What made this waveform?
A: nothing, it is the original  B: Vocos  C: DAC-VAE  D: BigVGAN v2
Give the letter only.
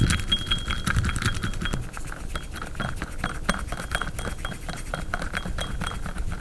A